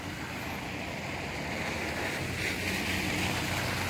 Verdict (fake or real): real